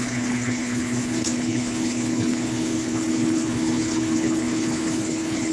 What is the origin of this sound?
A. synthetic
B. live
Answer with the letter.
A